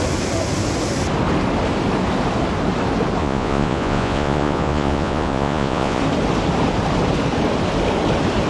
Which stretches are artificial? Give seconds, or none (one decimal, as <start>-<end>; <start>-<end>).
3.2-6.0